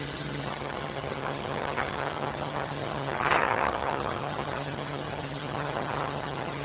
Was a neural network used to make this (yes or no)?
yes